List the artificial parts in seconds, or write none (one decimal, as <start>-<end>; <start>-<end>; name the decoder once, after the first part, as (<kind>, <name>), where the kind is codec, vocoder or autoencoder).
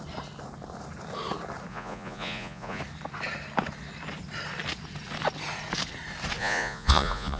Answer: 1.7-2.8 (vocoder, Vocos); 6.4-7.4